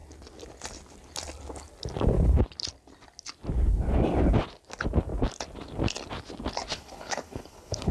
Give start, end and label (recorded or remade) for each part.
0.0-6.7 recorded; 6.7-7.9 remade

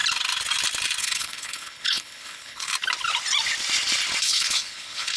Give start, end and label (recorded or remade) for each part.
0.0-1.0 recorded; 1.0-2.7 remade; 2.7-4.2 recorded; 4.2-5.2 remade

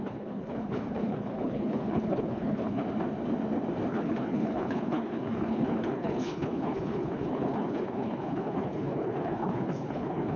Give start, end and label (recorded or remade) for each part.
0.0-2.8 remade; 2.8-3.9 recorded; 3.9-10.4 remade

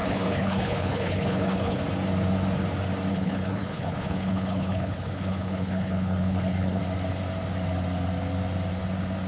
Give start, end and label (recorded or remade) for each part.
0.0-1.8 remade; 1.8-3.1 recorded; 3.1-6.8 remade; 6.8-9.3 recorded